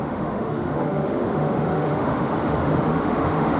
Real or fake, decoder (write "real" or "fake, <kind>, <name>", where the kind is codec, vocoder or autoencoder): fake, autoencoder, DAC-VAE